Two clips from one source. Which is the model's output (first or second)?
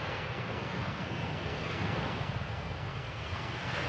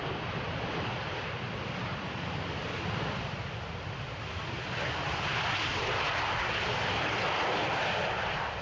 first